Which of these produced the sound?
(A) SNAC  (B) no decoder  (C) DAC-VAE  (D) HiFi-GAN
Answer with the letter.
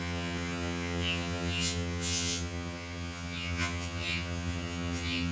D